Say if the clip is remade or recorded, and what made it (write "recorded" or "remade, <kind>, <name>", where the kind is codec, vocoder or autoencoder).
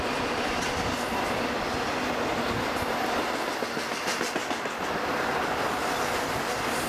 recorded